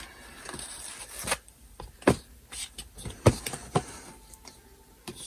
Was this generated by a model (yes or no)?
no